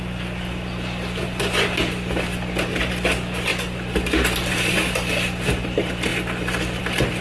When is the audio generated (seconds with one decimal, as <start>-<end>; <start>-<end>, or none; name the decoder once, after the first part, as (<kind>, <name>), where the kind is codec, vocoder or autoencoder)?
none